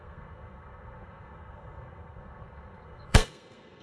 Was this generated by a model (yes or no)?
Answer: yes